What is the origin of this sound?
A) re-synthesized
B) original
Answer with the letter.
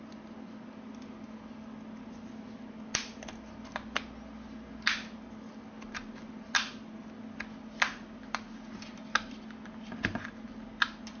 B